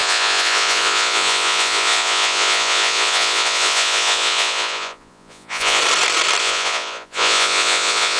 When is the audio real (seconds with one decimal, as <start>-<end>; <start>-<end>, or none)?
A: 5.8-6.4